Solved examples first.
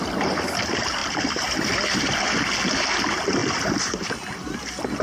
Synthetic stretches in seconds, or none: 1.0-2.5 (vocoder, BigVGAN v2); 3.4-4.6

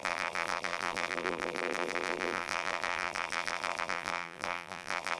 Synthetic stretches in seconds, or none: 0.0-5.2 (vocoder, BigVGAN v2)

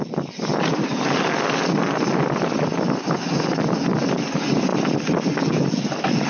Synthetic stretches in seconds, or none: 4.7-5.2 (vocoder, BigVGAN v2)

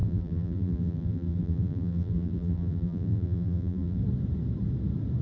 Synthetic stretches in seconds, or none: 0.0-4.0 (vocoder, BigVGAN v2)

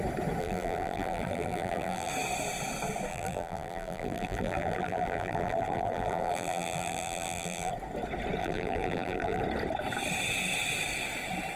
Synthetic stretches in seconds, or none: 0.4-2.1 (vocoder, BigVGAN v2); 3.1-7.7; 8.4-9.4

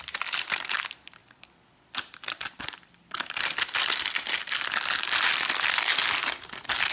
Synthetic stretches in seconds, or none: 1.2-5.0 (vocoder, BigVGAN v2)

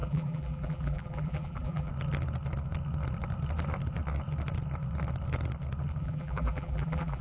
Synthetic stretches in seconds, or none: 0.0-1.9 (vocoder, BigVGAN v2); 6.0-7.2